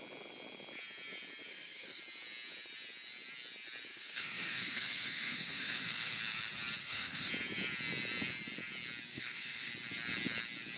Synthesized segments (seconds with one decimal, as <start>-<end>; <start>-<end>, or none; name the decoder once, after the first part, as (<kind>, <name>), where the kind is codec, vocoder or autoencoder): 1.5-2.0 (codec, SNAC); 3.9-6.2; 6.8-7.3; 9.1-9.7